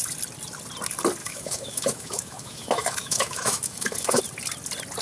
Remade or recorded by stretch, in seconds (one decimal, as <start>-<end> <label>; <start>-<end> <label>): 0.0-1.2 recorded; 1.2-4.2 remade; 4.2-5.0 recorded